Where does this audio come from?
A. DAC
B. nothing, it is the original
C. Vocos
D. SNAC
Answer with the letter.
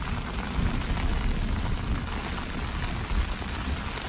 B